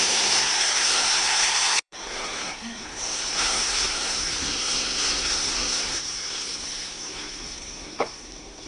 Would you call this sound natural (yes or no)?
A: no